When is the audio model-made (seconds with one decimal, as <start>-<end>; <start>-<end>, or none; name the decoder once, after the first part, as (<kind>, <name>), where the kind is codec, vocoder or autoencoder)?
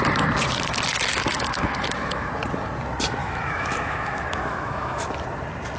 1.1-2.3 (autoencoder, DAC-VAE); 3.2-5.0